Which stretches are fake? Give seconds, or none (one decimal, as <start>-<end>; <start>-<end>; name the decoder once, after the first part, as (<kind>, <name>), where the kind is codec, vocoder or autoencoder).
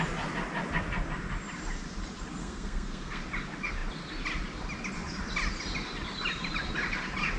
2.4-3.2 (codec, SNAC)